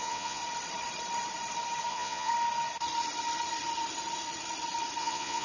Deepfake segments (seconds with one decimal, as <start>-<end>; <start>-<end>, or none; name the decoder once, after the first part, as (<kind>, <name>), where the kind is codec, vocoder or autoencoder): 0.0-0.4 (vocoder, Vocos); 1.9-2.3; 5.0-5.4